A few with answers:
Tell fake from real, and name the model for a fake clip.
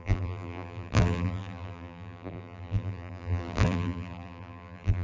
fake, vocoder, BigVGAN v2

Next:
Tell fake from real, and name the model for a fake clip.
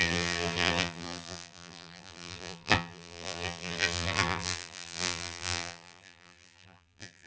fake, vocoder, BigVGAN v2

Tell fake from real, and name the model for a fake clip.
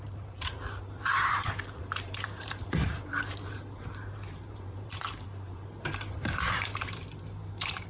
fake, vocoder, BigVGAN v2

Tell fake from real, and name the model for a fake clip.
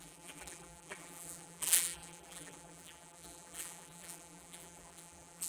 fake, vocoder, BigVGAN v2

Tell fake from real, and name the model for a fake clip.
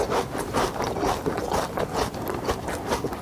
real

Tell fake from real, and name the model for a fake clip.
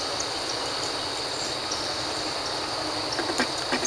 real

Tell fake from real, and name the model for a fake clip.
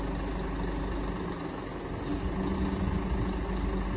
real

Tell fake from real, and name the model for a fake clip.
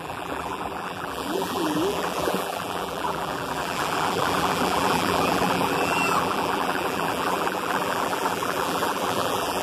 fake, vocoder, BigVGAN v2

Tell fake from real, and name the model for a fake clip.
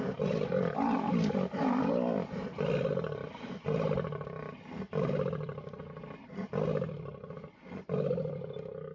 real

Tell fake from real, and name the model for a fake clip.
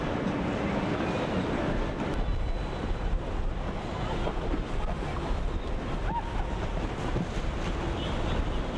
real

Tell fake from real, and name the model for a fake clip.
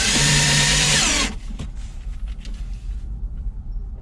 fake, vocoder, BigVGAN v2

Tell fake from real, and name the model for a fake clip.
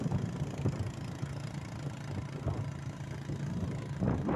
real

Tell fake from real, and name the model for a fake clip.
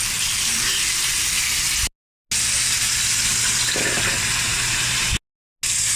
real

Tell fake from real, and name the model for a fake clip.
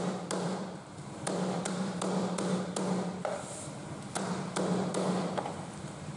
fake, vocoder, BigVGAN v2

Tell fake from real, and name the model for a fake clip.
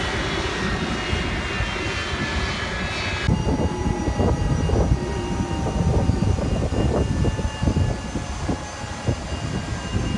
real